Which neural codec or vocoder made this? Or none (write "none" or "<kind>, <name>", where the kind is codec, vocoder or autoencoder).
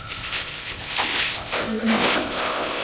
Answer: codec, ZipCodec